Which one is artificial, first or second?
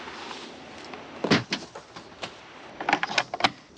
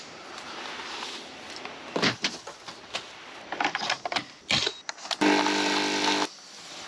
second